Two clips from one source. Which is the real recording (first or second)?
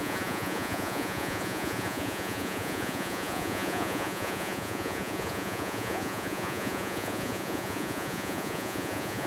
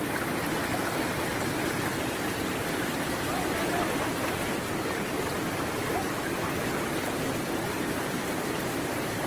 second